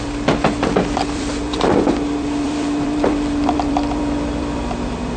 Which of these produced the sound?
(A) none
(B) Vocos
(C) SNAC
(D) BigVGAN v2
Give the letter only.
D